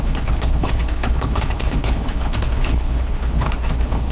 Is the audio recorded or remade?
remade